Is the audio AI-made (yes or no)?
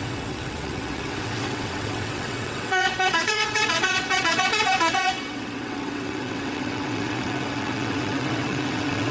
yes